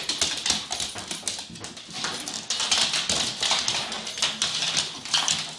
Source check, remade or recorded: recorded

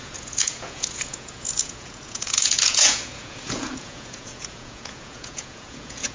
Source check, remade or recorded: remade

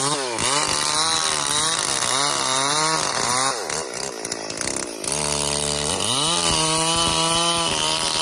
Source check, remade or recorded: recorded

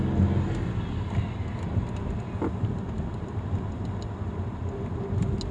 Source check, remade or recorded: recorded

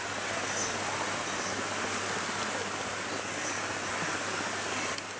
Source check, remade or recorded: recorded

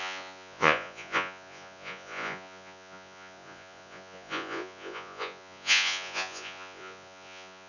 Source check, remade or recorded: remade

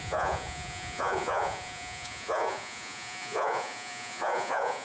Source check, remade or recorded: remade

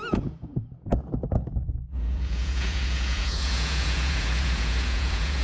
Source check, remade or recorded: remade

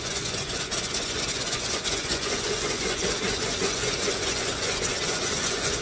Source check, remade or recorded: remade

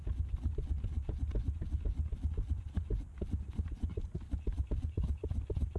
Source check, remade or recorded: recorded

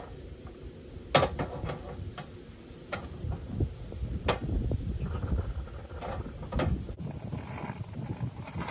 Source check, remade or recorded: recorded